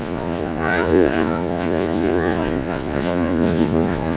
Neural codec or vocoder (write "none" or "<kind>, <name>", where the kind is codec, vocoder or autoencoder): vocoder, Vocos